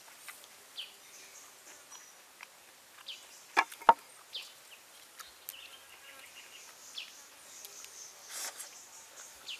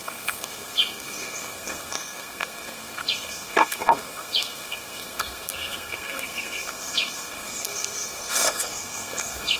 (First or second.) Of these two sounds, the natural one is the first